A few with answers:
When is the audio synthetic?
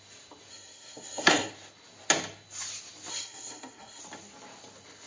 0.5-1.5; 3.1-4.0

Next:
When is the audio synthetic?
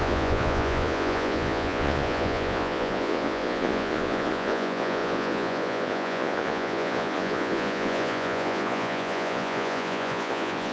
0.0-10.7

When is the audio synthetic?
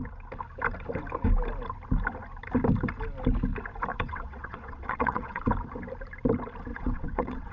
3.9-5.5; 6.7-7.5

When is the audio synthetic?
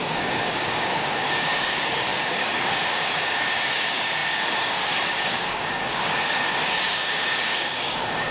0.0-8.3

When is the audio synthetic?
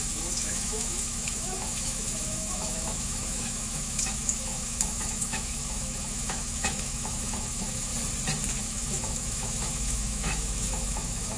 0.0-7.9; 8.5-11.4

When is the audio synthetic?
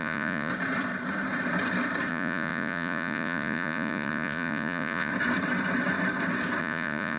0.0-0.5; 2.1-5.1; 6.6-7.2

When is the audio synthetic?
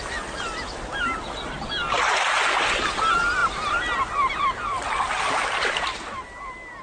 none